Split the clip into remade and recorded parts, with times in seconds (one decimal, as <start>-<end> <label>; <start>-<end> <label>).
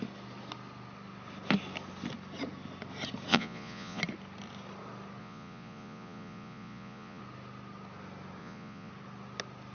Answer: 0.0-3.3 recorded; 3.3-4.0 remade; 4.0-5.2 recorded; 5.2-7.2 remade; 7.2-8.4 recorded; 8.4-8.9 remade; 8.9-9.7 recorded